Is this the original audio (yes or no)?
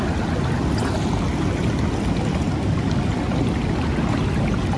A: yes